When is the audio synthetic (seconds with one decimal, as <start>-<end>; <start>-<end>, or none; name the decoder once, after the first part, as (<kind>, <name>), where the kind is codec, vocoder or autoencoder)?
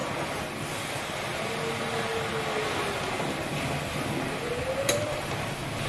none